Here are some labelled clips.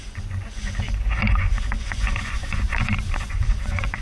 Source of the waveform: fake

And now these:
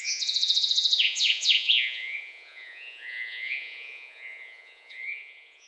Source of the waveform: fake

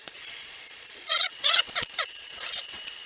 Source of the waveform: fake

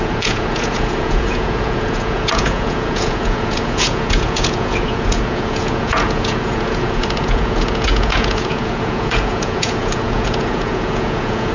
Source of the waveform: fake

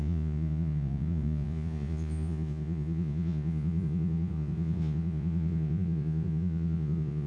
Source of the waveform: fake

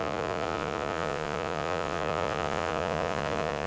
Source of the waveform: fake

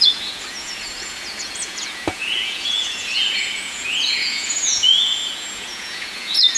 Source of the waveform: fake